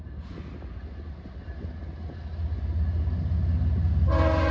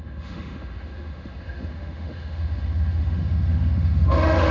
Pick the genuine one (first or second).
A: first